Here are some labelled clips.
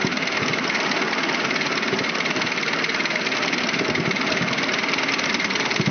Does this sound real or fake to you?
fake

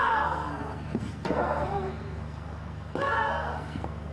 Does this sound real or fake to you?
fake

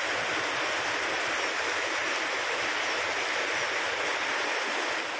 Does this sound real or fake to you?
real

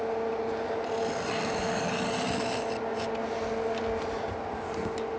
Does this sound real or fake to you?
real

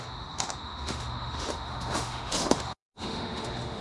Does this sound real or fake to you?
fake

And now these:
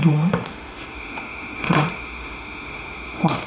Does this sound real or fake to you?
fake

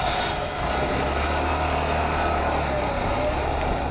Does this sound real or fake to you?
real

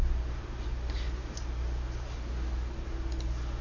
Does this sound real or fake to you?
real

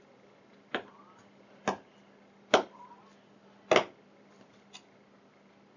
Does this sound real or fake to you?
real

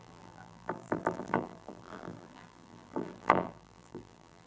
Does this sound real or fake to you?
fake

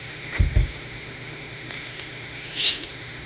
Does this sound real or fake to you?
fake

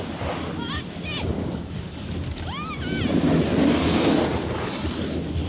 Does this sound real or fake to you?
real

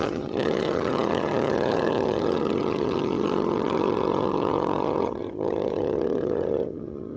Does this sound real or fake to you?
fake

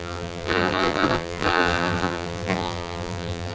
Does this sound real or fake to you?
fake